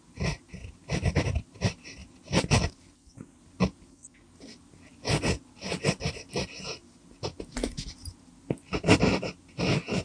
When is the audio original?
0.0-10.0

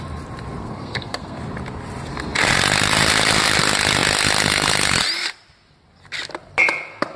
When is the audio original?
0.0-0.6; 1.4-7.2

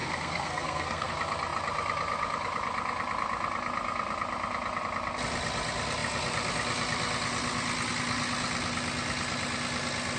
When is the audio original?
1.1-10.2

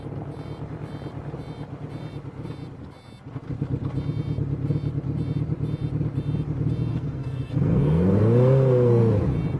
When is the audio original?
0.0-6.9; 9.0-9.6